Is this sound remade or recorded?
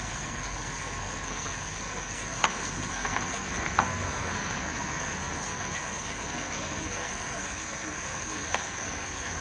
remade